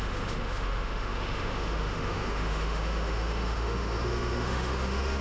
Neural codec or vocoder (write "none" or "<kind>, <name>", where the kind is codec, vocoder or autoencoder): autoencoder, DAC-VAE